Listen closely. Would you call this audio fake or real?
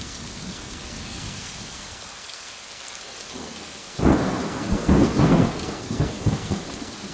fake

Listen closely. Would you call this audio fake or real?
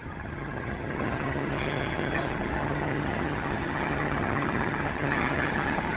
fake